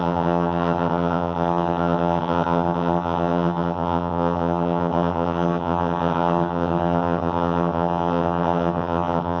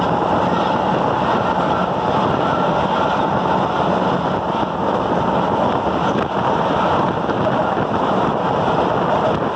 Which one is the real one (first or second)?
second